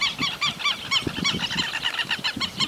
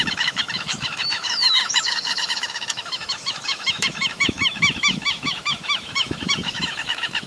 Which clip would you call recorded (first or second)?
first